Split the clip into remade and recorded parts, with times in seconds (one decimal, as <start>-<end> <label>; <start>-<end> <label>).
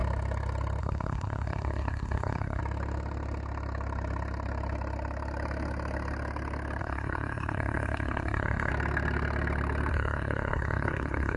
0.0-0.8 recorded; 0.8-2.6 remade; 2.6-6.8 recorded; 6.8-8.7 remade; 8.7-9.9 recorded; 9.9-11.4 remade